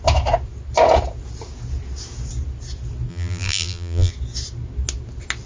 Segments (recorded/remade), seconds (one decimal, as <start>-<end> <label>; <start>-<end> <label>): 0.0-3.1 recorded; 3.1-4.1 remade; 4.1-5.5 recorded